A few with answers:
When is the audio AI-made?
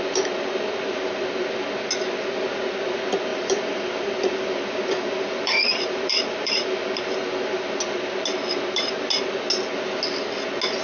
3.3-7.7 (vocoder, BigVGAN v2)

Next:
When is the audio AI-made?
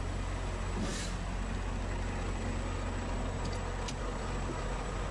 none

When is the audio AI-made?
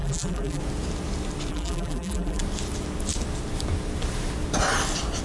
0.0-0.6 (vocoder, BigVGAN v2); 1.5-2.4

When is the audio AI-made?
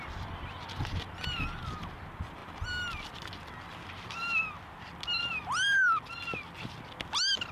none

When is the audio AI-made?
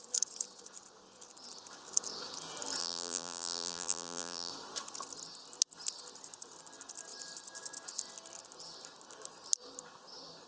2.8-4.5 (vocoder, BigVGAN v2)